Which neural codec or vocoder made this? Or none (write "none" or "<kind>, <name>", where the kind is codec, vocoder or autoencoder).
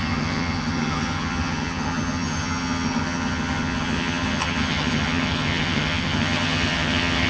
vocoder, HiFi-GAN